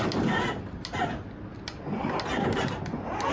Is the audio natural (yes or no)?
yes